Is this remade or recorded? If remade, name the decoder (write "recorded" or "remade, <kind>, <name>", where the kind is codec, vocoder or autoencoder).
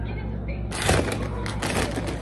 recorded